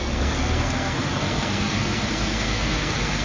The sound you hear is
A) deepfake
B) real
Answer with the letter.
A